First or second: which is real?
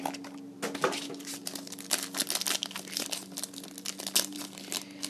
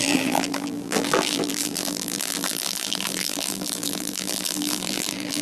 first